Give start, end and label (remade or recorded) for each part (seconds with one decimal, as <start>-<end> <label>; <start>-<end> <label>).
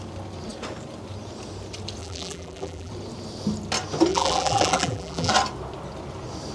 0.0-2.0 recorded; 2.0-2.9 remade; 2.9-4.1 recorded; 4.1-5.3 remade; 5.3-6.5 recorded